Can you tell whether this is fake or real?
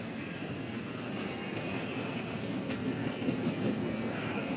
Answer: fake